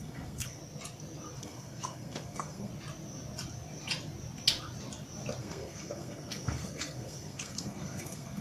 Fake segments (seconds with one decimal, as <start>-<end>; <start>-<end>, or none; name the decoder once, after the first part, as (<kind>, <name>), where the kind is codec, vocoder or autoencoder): 0.0-0.6 (codec, SNAC); 1.4-2.7; 5.4-8.4